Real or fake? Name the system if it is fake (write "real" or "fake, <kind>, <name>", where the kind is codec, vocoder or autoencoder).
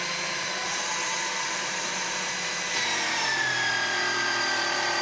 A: fake, vocoder, BigVGAN v2